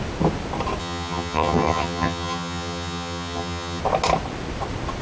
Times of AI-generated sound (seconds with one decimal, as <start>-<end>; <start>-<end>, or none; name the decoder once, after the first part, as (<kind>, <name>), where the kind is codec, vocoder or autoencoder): 0.8-3.8 (vocoder, HiFi-GAN)